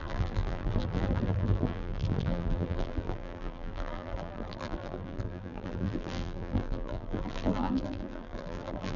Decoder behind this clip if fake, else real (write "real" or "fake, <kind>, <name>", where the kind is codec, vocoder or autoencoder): fake, vocoder, BigVGAN v2